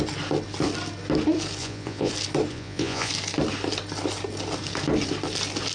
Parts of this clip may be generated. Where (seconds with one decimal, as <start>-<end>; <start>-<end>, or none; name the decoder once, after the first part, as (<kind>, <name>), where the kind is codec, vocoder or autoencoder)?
1.6-2.1 (vocoder, Vocos); 2.5-3.1